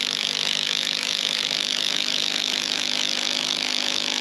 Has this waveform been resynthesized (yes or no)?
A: yes